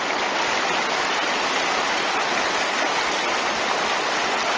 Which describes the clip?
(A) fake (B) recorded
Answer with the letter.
B